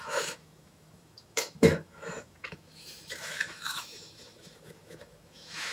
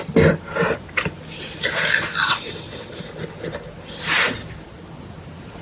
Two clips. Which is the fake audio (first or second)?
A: first